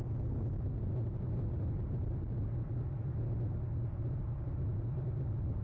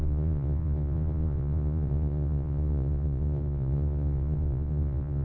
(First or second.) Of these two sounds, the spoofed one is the second